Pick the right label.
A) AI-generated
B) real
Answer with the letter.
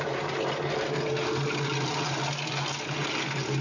B